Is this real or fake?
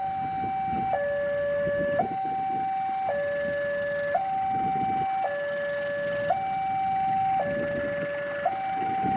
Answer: real